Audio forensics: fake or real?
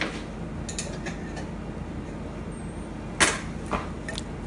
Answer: real